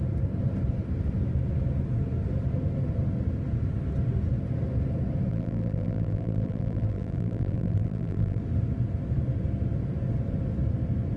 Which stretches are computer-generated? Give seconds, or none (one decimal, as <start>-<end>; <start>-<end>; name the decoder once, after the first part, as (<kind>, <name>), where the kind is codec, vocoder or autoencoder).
5.3-8.4 (vocoder, BigVGAN v2)